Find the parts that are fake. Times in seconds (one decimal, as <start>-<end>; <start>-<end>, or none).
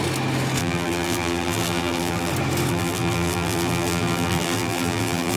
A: 0.6-2.3; 2.7-5.4